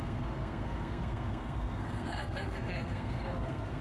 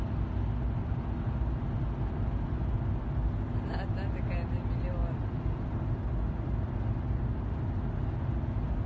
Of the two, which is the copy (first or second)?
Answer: first